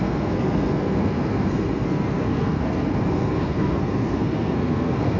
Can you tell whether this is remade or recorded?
remade